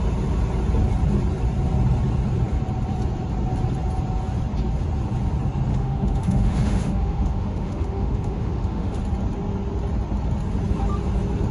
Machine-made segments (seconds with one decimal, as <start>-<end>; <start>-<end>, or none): 5.7-9.0